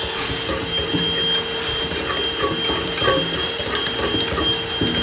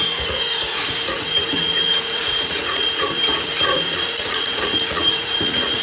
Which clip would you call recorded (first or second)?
first